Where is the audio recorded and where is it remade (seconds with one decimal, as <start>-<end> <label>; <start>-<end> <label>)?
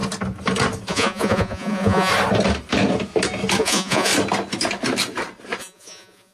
0.0-0.9 recorded; 0.9-2.1 remade; 2.1-3.6 recorded; 3.6-4.1 remade; 4.1-5.6 recorded; 5.6-6.3 remade